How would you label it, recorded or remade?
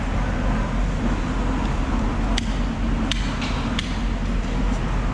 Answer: recorded